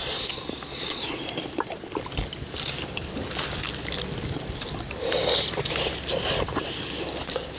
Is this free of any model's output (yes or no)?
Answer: yes